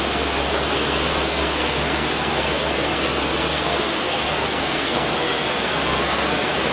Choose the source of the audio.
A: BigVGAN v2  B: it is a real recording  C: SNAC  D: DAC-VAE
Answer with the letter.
C